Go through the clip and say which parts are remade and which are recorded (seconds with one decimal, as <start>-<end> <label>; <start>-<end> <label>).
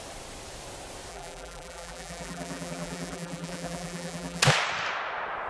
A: 0.0-1.1 recorded; 1.1-4.4 remade; 4.4-5.5 recorded